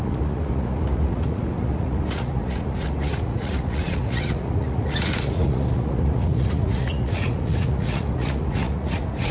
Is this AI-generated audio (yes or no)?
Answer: yes